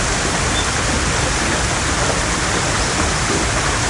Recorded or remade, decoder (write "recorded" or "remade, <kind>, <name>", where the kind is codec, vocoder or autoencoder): recorded